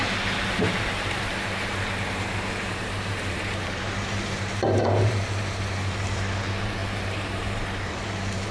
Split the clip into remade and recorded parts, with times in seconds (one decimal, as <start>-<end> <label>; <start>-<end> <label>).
0.0-8.5 remade